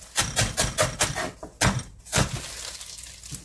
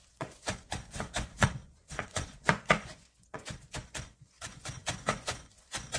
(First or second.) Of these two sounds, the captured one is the first